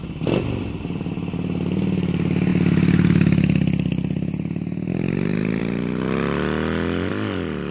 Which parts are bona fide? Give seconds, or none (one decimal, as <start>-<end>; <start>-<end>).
0.0-7.7